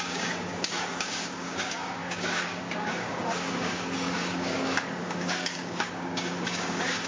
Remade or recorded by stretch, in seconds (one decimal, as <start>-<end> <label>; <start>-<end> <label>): 0.0-7.1 remade